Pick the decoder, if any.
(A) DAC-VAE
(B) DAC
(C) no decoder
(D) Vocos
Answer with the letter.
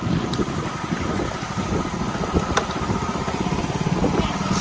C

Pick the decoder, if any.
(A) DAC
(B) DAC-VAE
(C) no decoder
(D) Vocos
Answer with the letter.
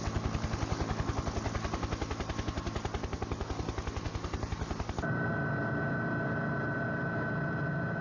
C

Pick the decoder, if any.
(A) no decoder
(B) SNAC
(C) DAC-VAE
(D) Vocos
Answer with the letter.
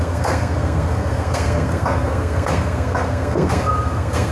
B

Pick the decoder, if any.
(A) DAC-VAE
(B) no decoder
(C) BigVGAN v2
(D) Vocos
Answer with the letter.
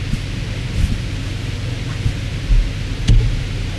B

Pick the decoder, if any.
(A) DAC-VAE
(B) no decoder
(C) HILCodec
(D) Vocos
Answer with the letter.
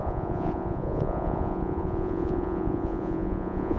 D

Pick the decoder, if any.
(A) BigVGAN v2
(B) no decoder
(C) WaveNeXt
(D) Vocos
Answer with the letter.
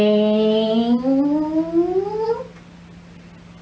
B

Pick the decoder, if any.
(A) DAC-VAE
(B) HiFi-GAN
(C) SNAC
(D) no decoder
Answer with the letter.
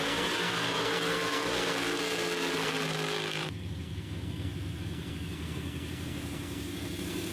C